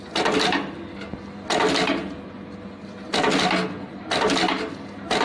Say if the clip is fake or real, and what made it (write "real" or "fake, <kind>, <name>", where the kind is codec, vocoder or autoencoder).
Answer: real